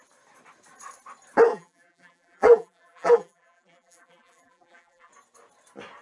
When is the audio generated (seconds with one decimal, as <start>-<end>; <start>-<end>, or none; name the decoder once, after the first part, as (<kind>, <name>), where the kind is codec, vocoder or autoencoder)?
1.5-5.1 (vocoder, BigVGAN v2)